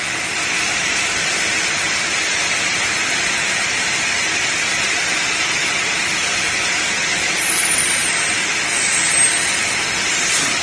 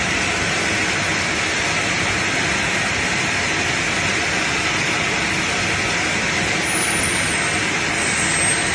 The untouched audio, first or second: second